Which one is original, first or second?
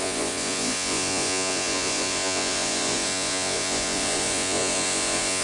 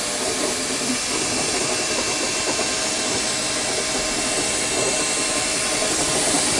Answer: second